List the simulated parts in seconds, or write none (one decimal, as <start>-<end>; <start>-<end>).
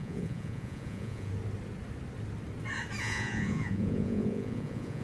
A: 0.0-1.3; 3.0-5.0